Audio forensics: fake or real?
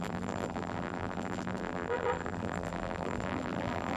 fake